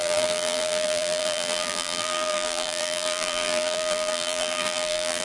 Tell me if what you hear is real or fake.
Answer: fake